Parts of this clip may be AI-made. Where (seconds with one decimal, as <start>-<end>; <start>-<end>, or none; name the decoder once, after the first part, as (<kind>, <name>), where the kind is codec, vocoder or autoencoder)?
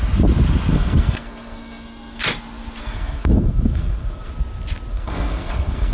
0.7-2.2 (codec, SNAC); 2.8-4.3; 4.9-5.9